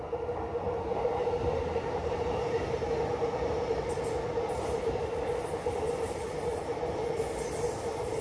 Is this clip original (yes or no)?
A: yes